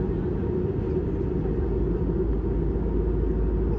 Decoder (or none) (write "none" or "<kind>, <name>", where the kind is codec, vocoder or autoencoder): none